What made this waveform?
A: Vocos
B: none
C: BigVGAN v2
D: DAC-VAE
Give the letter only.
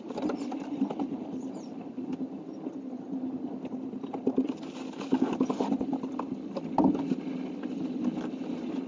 B